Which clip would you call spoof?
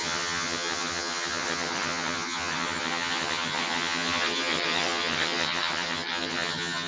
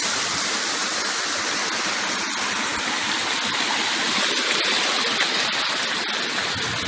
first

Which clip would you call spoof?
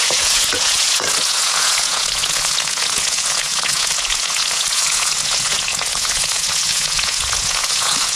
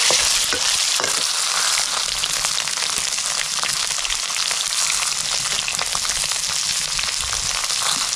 first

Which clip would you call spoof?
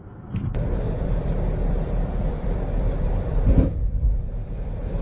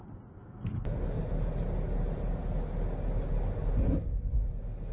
first